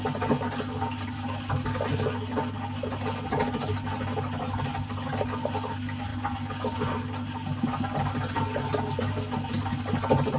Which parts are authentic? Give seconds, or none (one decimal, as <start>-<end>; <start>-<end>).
0.0-10.4

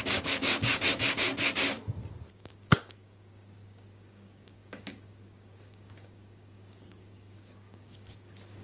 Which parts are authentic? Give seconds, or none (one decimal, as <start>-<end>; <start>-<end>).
1.3-2.3

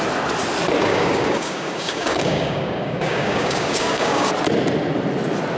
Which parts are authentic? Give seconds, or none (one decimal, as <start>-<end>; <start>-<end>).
0.0-0.9; 4.3-5.6

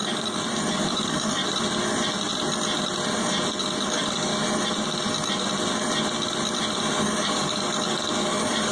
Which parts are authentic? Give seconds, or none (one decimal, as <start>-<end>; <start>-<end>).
0.0-0.7; 1.4-3.8; 4.3-6.8